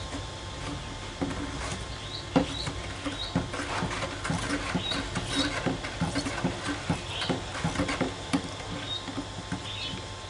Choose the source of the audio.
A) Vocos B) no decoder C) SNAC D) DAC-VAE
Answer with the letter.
B